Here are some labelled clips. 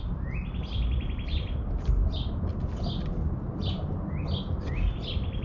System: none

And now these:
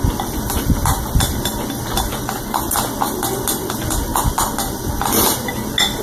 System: none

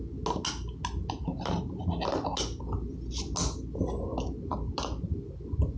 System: none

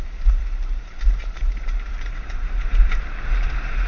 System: vocoder, BigVGAN v2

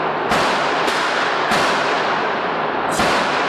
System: none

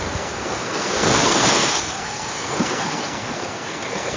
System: codec, SNAC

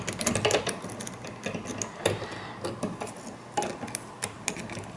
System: none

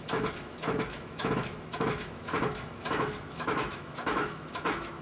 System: autoencoder, DAC-VAE